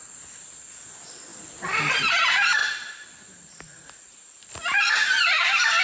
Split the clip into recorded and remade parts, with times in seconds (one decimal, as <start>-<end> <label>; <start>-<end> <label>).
0.0-5.8 recorded